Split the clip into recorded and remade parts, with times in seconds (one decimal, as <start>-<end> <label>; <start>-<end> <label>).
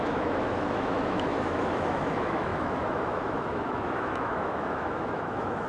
0.0-5.7 remade